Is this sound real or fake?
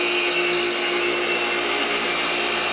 real